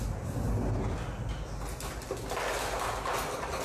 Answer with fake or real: real